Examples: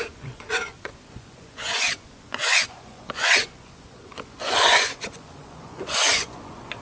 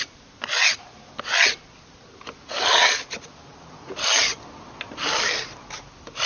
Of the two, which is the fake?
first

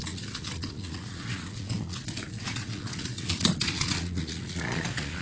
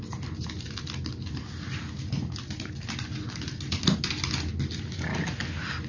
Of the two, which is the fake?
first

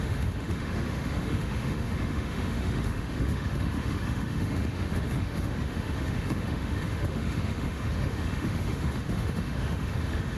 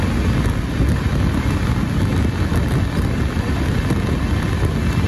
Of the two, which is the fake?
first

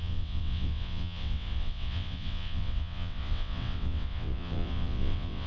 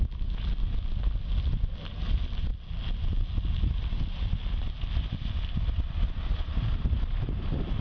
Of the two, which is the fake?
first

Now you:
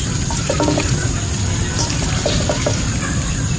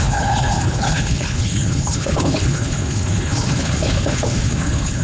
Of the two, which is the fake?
second